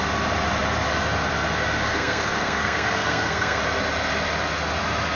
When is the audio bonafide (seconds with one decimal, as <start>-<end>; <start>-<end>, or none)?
0.0-1.9; 3.6-5.2